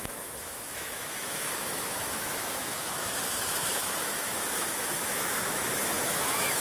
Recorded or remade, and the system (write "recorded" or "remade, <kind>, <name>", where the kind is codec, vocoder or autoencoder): remade, autoencoder, DAC-VAE